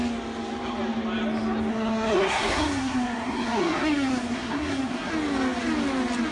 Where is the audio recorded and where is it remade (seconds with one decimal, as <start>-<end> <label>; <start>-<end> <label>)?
0.0-1.7 recorded; 1.7-5.1 remade; 5.1-6.3 recorded

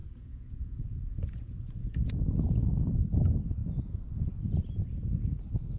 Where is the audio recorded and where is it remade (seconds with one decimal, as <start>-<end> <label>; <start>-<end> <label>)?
0.0-2.1 remade; 2.1-3.6 recorded; 3.6-4.6 remade; 4.6-5.8 recorded

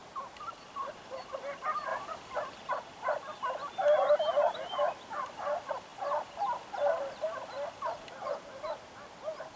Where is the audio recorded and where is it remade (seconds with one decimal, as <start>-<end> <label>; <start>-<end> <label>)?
0.0-1.0 remade; 1.0-1.9 recorded; 1.9-2.7 remade; 2.7-9.6 recorded

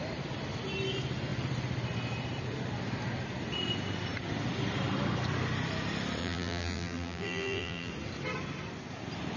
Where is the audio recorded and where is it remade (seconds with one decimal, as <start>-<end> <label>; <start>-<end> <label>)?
0.0-6.2 recorded; 6.2-7.9 remade; 7.9-9.4 recorded

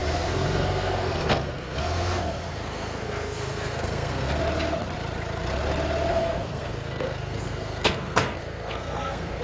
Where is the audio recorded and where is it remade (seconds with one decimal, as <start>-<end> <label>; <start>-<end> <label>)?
0.0-4.4 remade; 4.4-6.1 recorded; 6.1-9.4 remade